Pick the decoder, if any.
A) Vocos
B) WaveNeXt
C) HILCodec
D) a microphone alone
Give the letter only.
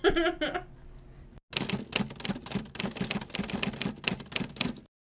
D